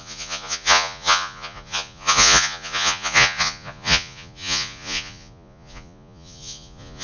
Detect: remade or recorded remade